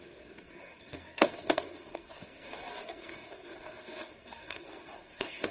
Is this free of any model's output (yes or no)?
no